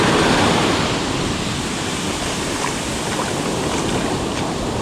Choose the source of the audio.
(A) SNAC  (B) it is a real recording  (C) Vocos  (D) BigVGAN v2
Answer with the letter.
B